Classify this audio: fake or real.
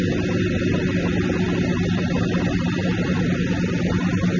real